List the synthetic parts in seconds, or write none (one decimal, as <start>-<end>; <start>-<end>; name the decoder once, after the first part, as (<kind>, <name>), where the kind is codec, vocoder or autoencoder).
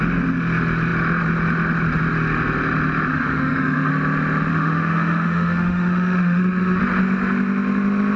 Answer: 3.1-3.9 (autoencoder, DAC-VAE); 4.5-6.8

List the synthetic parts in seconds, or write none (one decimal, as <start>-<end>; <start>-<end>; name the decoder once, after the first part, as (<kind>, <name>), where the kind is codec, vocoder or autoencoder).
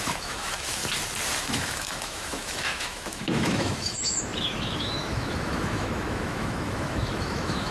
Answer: 0.0-0.8 (autoencoder, DAC-VAE); 1.4-7.7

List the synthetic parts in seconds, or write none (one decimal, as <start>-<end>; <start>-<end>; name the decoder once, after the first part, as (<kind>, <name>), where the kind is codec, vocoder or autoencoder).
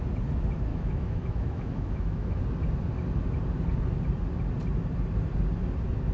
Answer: 0.7-2.4 (autoencoder, DAC-VAE)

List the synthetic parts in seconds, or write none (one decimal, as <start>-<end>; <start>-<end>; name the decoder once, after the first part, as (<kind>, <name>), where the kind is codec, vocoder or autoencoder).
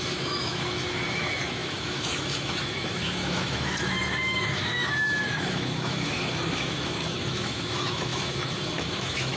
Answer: 0.0-9.4 (autoencoder, DAC-VAE)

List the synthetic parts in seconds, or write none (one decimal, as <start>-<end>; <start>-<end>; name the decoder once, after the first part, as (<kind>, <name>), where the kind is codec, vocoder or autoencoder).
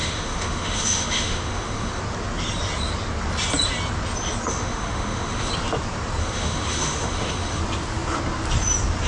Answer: 0.0-2.0 (autoencoder, DAC-VAE); 4.5-5.5; 6.2-7.6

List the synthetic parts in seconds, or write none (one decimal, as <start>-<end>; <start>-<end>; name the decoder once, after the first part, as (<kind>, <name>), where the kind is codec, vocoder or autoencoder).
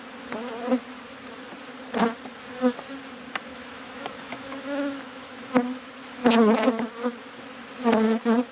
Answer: 3.5-5.5 (autoencoder, DAC-VAE); 6.2-6.9